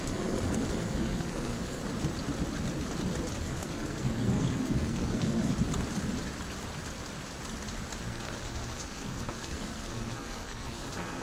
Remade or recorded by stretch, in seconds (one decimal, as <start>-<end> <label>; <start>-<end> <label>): 0.0-1.8 remade; 1.8-3.4 recorded; 3.4-5.5 remade; 5.5-8.0 recorded; 8.0-11.2 remade

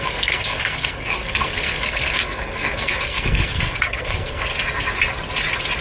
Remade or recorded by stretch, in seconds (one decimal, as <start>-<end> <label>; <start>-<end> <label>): 0.0-4.5 remade; 4.5-5.8 recorded

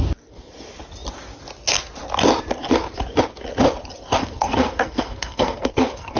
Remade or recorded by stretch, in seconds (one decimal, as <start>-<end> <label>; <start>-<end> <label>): 0.0-4.2 recorded; 4.2-6.2 remade

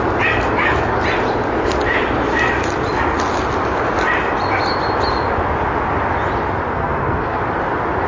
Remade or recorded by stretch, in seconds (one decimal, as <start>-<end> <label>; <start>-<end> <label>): 0.0-6.8 recorded; 6.8-7.4 remade; 7.4-8.1 recorded

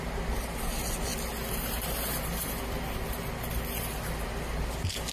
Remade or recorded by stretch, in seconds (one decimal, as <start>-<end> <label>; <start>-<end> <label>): 0.0-5.1 recorded

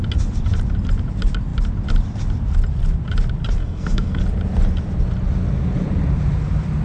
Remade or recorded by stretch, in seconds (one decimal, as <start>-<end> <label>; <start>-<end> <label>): 0.0-3.6 recorded; 3.6-4.2 remade; 4.2-6.8 recorded